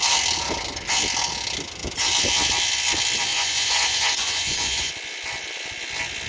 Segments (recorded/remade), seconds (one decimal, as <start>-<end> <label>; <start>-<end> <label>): 0.0-3.3 recorded; 3.3-4.9 remade; 4.9-6.3 recorded